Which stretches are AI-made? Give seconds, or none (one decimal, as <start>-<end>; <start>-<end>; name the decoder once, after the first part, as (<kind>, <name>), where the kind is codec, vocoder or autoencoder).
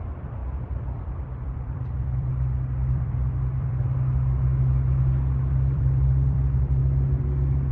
0.0-6.8 (vocoder, BigVGAN v2)